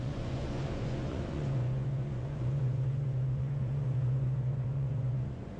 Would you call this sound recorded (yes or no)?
no